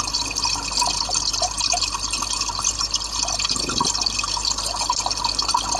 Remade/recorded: recorded